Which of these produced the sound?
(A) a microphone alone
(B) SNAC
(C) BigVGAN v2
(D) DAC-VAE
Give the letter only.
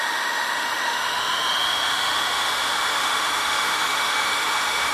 D